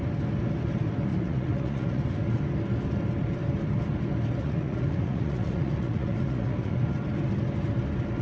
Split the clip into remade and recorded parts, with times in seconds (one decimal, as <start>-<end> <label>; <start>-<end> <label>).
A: 0.0-1.1 recorded; 1.1-2.0 remade; 2.0-4.4 recorded; 4.4-6.8 remade; 6.8-8.2 recorded